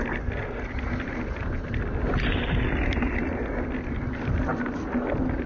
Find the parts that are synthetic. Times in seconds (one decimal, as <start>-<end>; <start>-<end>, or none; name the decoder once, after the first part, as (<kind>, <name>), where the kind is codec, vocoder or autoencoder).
none